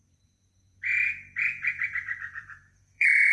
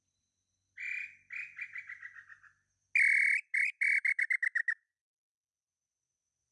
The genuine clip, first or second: second